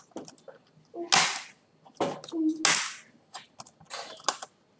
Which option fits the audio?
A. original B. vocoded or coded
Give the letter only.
A